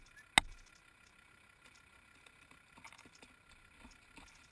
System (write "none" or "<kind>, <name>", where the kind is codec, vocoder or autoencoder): none